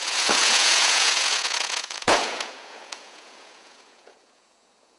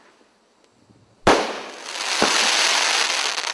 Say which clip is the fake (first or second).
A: first